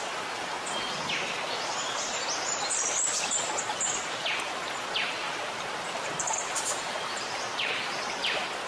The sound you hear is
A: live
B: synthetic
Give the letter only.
A